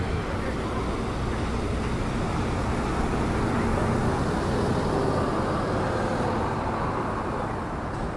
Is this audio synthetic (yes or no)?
no